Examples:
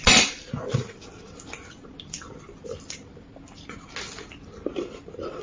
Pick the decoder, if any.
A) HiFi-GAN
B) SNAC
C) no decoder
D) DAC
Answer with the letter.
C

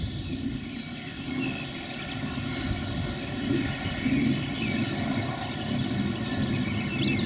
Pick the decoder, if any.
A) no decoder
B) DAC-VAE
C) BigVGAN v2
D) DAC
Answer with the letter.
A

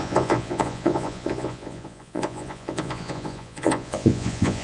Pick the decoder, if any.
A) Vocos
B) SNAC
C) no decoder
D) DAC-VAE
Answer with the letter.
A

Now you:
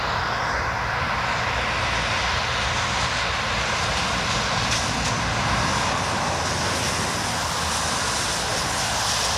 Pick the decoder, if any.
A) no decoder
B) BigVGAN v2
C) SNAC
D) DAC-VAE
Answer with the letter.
A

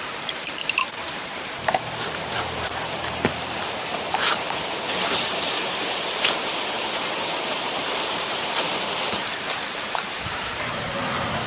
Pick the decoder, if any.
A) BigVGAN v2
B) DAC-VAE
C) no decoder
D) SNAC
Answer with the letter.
A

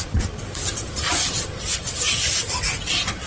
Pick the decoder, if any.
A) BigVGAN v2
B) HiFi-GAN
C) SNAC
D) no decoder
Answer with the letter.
D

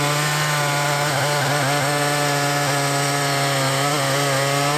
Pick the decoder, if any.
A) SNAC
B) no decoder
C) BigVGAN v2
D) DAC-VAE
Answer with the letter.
B